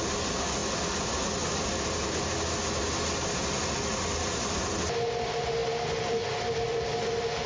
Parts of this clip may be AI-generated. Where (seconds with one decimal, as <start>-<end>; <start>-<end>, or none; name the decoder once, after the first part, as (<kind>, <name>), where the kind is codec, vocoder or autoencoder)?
none